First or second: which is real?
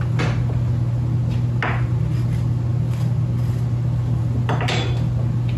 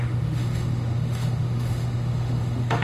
first